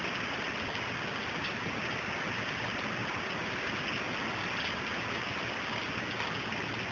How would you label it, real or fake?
real